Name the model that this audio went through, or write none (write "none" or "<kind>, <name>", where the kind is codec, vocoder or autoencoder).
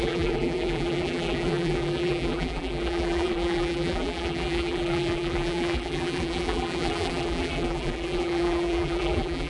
vocoder, BigVGAN v2